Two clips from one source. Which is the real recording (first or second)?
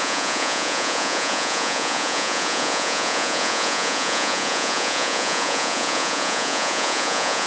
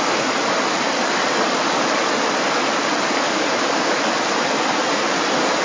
second